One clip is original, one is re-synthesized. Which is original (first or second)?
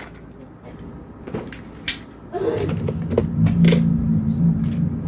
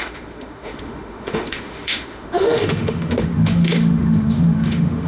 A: first